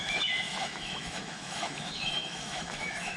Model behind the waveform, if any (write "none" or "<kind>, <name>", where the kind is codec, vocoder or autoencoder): autoencoder, DAC-VAE